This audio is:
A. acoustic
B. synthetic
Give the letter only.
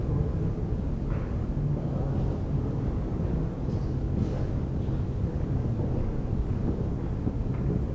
B